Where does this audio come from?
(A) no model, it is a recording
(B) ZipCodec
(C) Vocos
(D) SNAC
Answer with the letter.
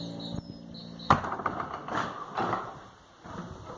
A